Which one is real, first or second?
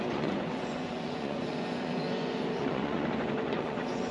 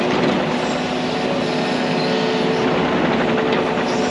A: second